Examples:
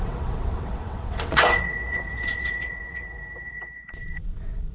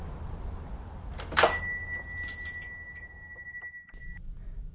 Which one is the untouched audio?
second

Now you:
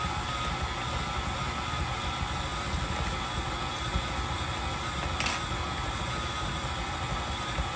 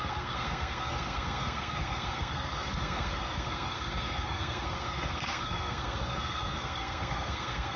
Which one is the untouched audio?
first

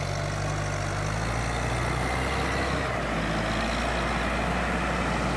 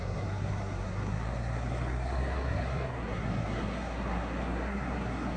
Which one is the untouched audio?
first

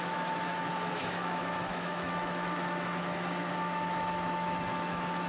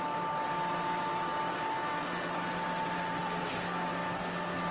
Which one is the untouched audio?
second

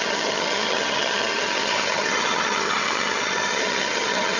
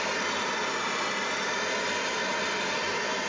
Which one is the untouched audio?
second